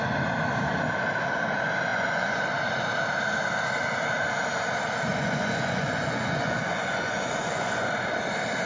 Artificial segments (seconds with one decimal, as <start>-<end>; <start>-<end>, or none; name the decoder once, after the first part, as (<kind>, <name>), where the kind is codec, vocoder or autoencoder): 1.9-2.4 (vocoder, Vocos); 5.1-7.9